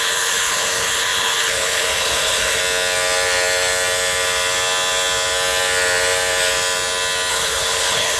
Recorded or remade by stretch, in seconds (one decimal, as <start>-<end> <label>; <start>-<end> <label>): 0.0-2.6 remade; 2.6-7.3 recorded; 7.3-8.2 remade